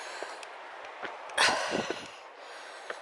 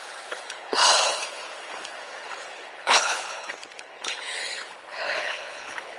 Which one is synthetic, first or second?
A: second